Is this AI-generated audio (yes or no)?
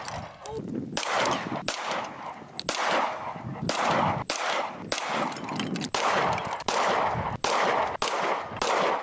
no